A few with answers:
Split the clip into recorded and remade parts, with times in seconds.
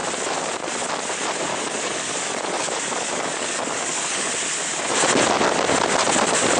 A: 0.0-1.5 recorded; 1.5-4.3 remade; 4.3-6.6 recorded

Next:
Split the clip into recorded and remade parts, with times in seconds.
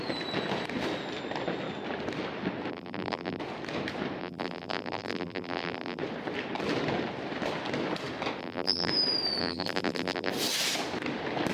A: 0.0-2.7 recorded; 2.7-3.4 remade; 3.4-4.2 recorded; 4.2-6.0 remade; 6.0-8.4 recorded; 8.4-8.9 remade; 8.9-9.4 recorded; 9.4-10.3 remade; 10.3-11.5 recorded